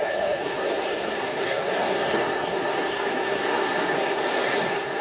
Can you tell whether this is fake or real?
fake